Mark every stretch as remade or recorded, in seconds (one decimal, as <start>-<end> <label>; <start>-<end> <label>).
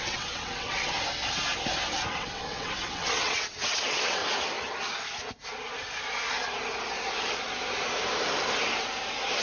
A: 0.0-0.9 remade; 0.9-2.1 recorded; 2.1-4.2 remade; 4.2-9.4 recorded